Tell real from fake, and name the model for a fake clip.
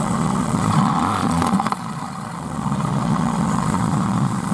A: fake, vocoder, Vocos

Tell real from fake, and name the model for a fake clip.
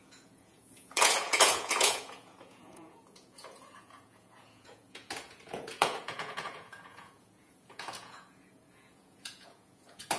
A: fake, vocoder, Vocos